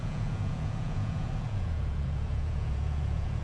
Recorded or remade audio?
remade